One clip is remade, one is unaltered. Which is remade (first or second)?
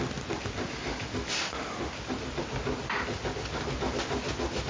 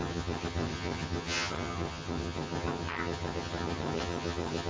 second